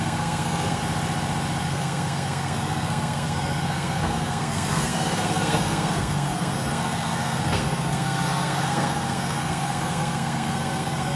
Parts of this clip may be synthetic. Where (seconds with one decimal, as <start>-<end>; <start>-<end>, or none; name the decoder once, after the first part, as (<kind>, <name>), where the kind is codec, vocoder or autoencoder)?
0.0-0.8 (codec, SNAC); 1.6-11.2